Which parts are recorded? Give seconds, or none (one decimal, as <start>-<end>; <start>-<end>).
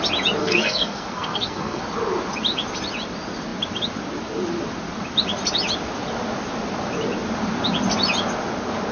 0.0-0.4; 1.8-8.9